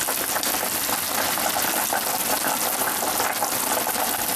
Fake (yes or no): no